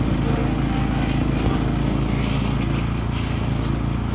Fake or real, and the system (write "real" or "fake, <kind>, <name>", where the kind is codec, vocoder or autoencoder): real